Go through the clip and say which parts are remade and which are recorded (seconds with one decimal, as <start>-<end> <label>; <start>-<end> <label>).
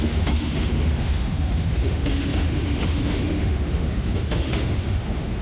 0.0-5.4 remade